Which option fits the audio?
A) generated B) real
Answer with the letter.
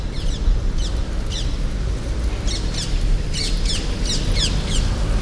B